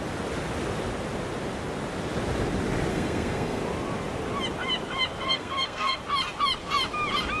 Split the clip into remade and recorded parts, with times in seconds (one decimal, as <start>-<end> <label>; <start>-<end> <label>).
0.0-2.9 recorded; 2.9-3.6 remade; 3.6-5.2 recorded; 5.2-6.0 remade; 6.0-7.4 recorded